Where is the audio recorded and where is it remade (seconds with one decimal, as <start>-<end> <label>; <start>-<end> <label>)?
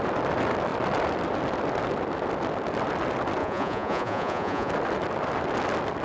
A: 0.0-3.4 recorded; 3.4-4.7 remade; 4.7-6.0 recorded